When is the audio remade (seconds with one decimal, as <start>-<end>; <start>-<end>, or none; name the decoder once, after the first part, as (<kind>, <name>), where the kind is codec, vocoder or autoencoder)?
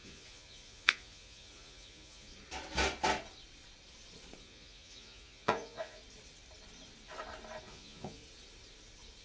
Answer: 0.0-2.3 (vocoder, Vocos); 4.4-6.0; 7.6-8.2